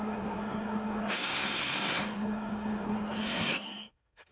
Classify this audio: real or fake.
fake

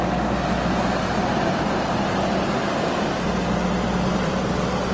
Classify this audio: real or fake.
real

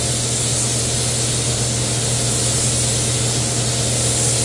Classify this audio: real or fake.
real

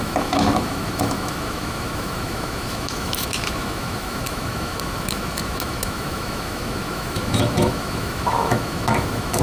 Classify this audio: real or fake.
fake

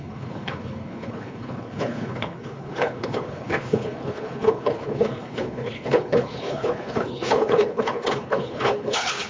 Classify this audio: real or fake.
fake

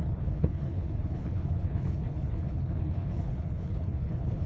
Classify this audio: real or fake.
fake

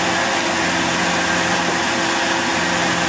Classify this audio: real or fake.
real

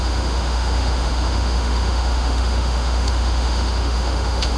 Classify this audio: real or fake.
fake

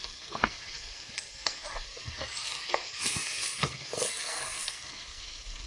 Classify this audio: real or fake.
fake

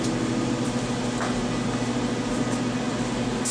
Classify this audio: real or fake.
real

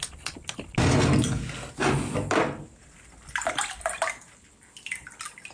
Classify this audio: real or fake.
real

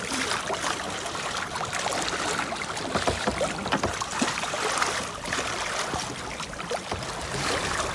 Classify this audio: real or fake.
real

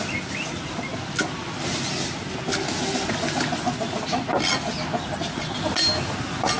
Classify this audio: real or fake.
real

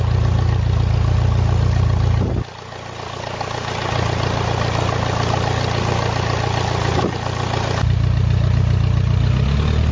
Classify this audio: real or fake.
real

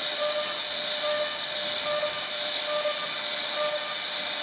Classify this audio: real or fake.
real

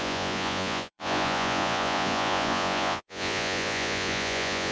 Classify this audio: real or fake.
fake